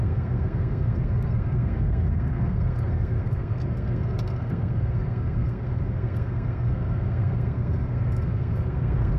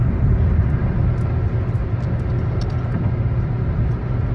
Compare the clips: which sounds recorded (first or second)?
second